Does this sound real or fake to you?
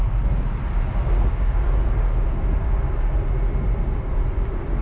real